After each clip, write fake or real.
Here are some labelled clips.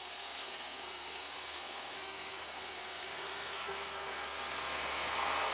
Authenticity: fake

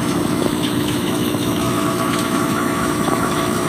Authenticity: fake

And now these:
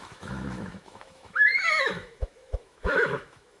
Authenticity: fake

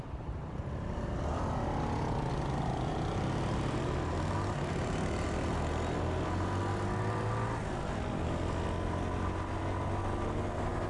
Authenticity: real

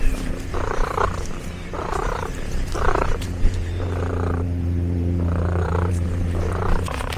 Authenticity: fake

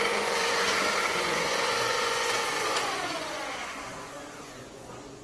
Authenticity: fake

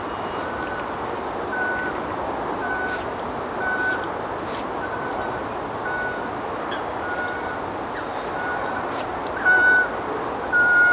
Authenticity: real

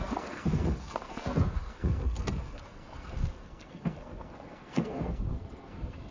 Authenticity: fake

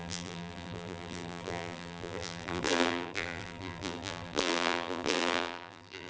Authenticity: fake